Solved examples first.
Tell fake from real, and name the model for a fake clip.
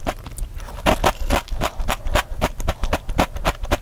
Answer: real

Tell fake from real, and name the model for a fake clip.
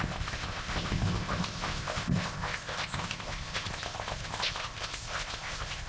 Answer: fake, codec, ZipCodec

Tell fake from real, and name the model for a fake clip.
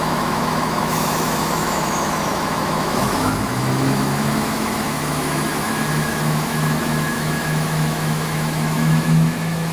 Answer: fake, autoencoder, DAC-VAE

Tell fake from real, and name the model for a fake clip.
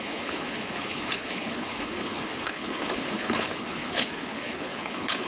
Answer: fake, codec, HILCodec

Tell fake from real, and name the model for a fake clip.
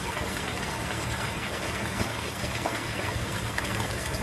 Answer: fake, codec, SNAC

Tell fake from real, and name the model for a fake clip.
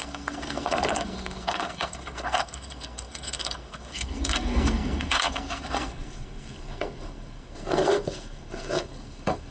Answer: fake, codec, SNAC